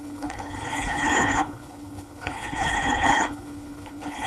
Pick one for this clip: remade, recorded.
remade